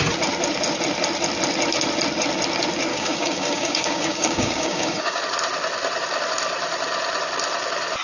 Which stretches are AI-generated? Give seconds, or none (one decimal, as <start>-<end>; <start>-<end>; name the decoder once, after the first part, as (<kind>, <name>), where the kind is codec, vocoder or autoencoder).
2.9-5.2 (codec, DAC)